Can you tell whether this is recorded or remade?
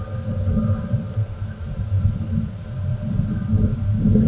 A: recorded